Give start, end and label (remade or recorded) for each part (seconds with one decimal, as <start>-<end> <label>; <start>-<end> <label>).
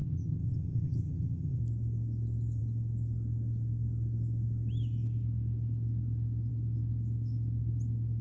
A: 0.0-1.6 remade; 1.6-8.2 recorded